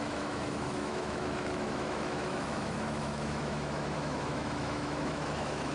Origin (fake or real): fake